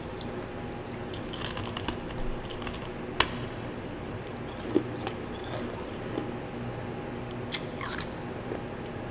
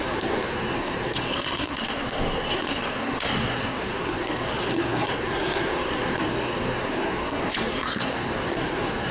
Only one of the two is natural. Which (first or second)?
first